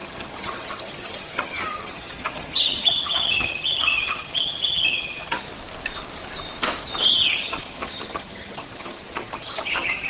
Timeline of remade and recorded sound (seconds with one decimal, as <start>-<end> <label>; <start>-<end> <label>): 0.0-5.5 remade; 5.5-7.1 recorded; 7.1-10.1 remade